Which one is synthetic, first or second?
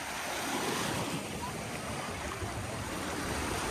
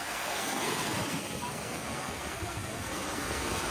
second